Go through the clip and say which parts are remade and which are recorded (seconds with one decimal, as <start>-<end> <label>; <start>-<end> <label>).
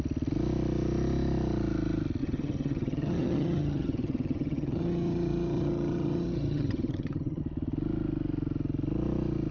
0.0-2.2 recorded; 2.2-7.4 remade; 7.4-9.5 recorded